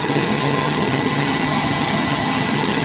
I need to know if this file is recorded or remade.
remade